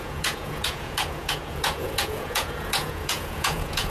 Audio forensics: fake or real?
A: fake